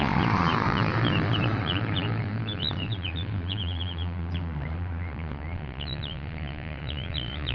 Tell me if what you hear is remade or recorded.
remade